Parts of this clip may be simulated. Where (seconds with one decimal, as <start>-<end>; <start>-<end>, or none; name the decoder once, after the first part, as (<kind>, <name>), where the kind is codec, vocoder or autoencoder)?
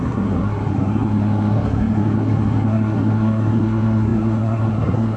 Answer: 0.0-5.2 (codec, SNAC)